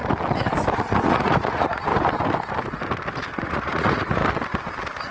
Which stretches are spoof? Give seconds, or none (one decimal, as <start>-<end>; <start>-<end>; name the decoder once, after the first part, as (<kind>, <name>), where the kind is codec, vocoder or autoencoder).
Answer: 0.7-1.9 (vocoder, Vocos); 3.4-4.2